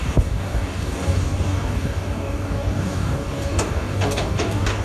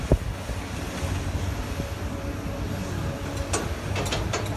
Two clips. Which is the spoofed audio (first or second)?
first